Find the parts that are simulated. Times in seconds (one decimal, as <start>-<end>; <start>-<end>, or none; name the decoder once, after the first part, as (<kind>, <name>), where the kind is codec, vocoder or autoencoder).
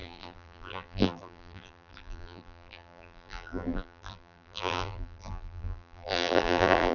0.0-6.9 (vocoder, BigVGAN v2)